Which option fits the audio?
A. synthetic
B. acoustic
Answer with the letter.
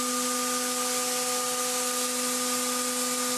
B